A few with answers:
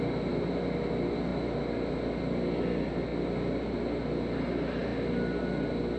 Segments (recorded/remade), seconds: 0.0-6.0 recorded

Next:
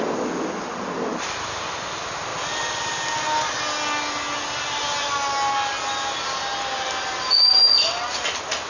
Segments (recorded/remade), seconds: 0.0-8.7 recorded

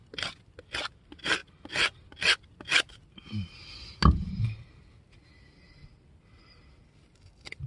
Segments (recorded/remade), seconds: 0.0-7.7 recorded

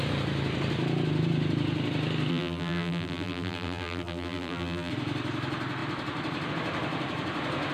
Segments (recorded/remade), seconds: 0.0-2.3 recorded; 2.3-4.9 remade; 4.9-7.7 recorded